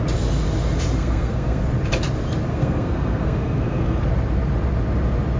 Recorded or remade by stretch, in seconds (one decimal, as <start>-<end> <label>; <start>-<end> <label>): 0.0-1.0 recorded; 1.0-1.6 remade; 1.6-2.5 recorded; 2.5-4.0 remade; 4.0-5.4 recorded